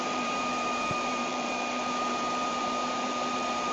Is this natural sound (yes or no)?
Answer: no